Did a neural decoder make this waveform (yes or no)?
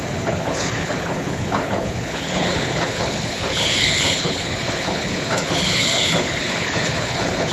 yes